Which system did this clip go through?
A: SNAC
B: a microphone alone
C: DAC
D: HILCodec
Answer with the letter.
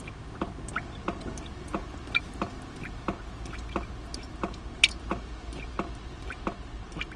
B